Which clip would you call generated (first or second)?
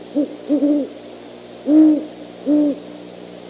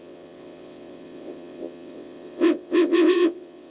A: second